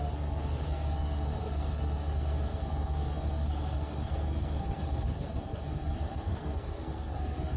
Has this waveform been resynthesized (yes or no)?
yes